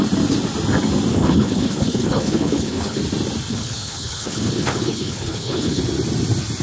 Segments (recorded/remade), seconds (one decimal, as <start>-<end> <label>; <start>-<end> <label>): 0.0-1.1 recorded; 1.1-3.0 remade; 3.0-3.5 recorded; 3.5-5.8 remade; 5.8-6.6 recorded